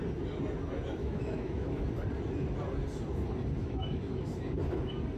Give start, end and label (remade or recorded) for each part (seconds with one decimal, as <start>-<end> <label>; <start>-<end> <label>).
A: 0.0-1.0 recorded; 1.0-1.8 remade; 1.8-3.6 recorded; 3.6-4.3 remade; 4.3-5.2 recorded